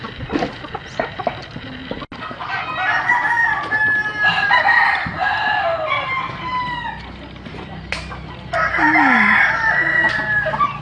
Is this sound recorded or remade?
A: recorded